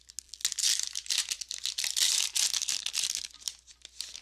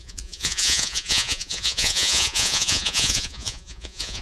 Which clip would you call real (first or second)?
first